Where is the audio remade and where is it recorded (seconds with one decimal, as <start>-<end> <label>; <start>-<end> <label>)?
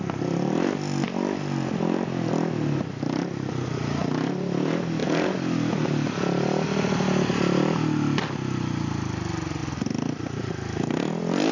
0.0-11.5 recorded